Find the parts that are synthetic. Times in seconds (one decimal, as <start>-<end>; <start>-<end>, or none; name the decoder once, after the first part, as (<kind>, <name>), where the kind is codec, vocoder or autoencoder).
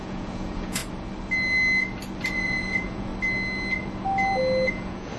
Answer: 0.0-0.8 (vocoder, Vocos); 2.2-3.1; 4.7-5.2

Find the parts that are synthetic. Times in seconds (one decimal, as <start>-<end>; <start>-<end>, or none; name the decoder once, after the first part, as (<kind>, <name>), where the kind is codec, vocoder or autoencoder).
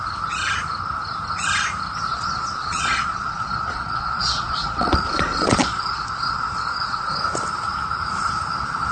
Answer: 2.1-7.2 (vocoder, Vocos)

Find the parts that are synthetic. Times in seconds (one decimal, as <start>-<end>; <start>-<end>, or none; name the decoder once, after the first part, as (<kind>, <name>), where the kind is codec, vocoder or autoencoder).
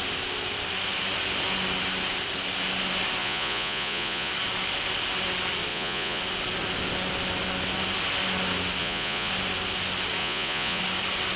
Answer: 3.2-4.3 (vocoder, Vocos); 5.7-6.2; 8.8-9.3; 10.2-10.8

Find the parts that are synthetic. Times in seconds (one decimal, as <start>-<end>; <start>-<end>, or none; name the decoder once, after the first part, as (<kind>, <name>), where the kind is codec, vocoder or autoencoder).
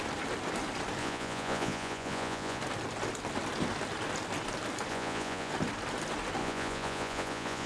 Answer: 1.0-2.6 (vocoder, Vocos); 4.9-5.5; 6.4-7.7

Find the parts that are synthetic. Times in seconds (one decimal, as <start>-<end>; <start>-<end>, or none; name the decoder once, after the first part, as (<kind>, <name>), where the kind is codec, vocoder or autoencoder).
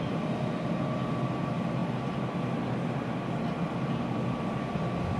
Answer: none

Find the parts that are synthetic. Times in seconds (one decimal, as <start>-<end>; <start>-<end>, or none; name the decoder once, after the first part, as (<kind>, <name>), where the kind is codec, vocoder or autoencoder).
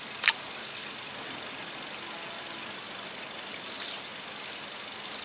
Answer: none